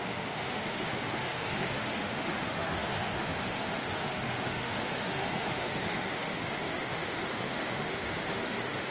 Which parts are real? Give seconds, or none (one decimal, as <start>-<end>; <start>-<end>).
none